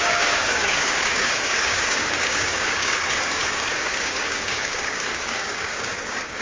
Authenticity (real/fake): fake